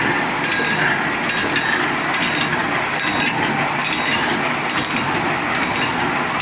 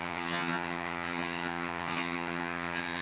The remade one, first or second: second